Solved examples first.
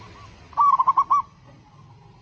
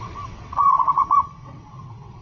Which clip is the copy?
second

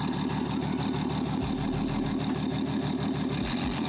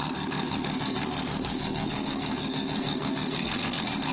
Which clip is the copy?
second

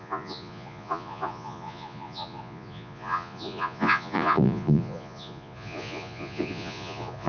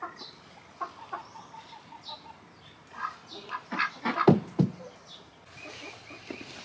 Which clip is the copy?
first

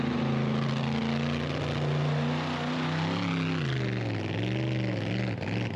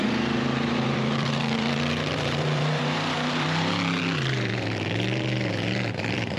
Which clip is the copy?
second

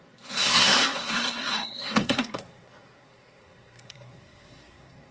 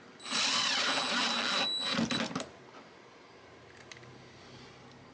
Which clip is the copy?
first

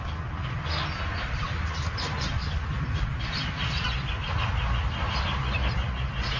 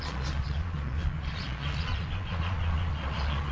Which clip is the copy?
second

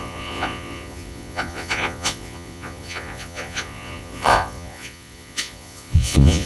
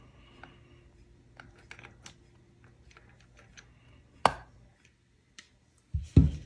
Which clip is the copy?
first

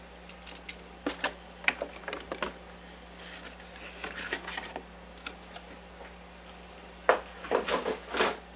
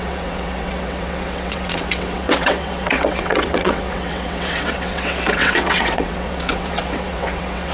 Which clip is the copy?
second